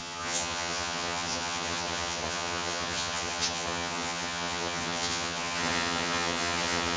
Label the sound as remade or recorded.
remade